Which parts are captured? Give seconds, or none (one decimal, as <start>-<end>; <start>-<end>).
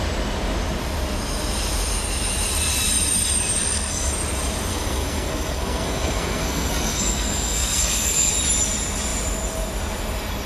0.0-3.6; 4.1-4.7; 8.3-10.5